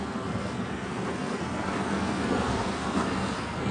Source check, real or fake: fake